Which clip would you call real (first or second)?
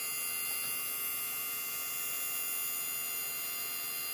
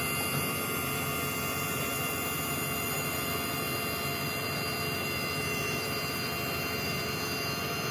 first